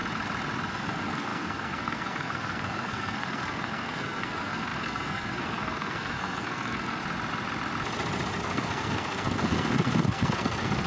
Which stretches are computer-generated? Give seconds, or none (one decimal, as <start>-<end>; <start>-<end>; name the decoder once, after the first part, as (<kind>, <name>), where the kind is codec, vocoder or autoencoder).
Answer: 0.7-7.0 (codec, SNAC); 8.4-10.9